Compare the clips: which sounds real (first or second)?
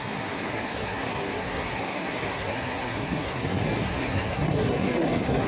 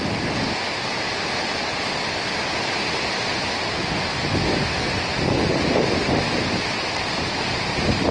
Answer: second